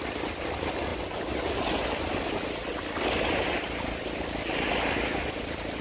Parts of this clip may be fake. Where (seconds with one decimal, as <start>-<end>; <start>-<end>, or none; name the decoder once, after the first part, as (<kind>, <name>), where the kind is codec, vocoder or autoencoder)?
none